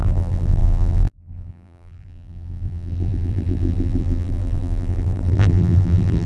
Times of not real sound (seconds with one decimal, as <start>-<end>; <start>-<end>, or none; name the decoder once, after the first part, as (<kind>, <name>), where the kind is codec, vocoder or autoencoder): 0.0-6.3 (vocoder, BigVGAN v2)